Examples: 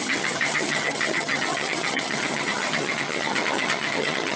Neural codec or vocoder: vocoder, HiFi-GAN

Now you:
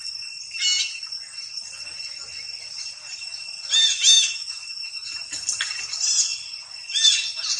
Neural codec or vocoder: none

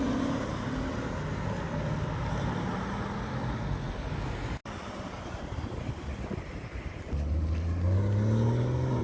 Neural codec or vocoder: none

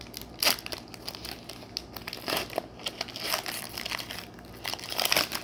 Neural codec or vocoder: none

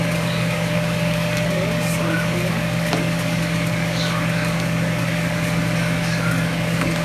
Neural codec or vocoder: codec, DAC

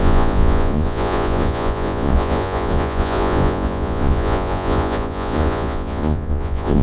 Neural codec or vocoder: vocoder, Vocos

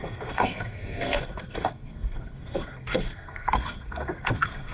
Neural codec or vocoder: codec, SNAC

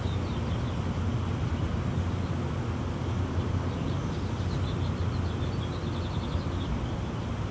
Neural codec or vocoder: none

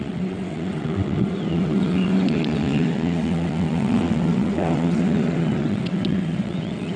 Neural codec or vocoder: vocoder, WaveNeXt